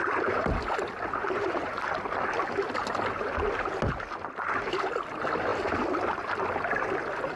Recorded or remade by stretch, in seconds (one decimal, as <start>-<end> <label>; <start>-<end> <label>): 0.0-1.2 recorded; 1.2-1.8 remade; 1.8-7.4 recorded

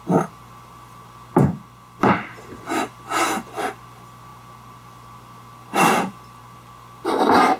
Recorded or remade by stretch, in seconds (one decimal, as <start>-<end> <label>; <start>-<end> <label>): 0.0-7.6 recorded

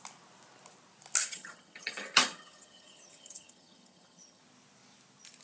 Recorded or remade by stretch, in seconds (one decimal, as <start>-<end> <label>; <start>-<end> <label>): 0.0-1.2 recorded; 1.2-4.4 remade; 4.4-5.4 recorded

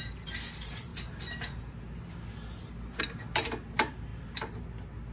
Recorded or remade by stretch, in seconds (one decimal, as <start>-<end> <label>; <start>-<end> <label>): 0.0-5.1 recorded

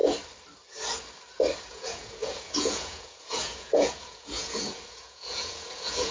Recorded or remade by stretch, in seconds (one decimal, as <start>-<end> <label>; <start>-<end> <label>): 0.0-1.7 recorded; 1.7-6.1 remade